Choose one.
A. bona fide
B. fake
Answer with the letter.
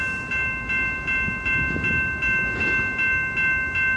A